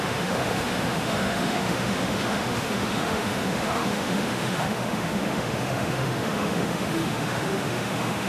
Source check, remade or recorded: remade